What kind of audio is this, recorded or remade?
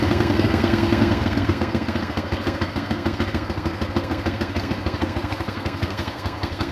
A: remade